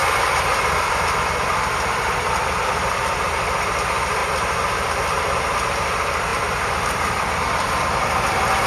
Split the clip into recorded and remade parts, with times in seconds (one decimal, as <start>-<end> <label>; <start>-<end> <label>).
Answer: 0.0-8.7 recorded